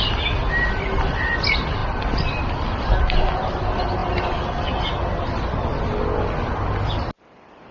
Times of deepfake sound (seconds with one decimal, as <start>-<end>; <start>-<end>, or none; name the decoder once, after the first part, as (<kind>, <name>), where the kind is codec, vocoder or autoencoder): none